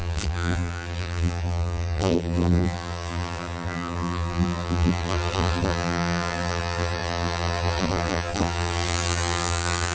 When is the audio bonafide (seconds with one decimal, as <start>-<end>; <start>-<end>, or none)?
none